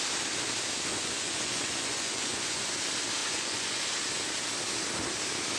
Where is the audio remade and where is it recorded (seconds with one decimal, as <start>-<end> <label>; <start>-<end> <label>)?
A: 0.0-0.9 recorded; 0.9-2.7 remade; 2.7-3.2 recorded; 3.2-3.9 remade; 3.9-5.6 recorded